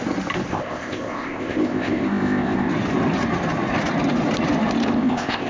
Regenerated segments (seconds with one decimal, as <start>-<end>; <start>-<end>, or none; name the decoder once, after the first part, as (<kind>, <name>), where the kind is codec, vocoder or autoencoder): 0.5-2.7 (codec, ZipCodec); 4.8-5.5